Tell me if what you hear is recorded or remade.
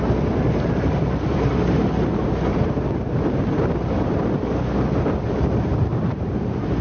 remade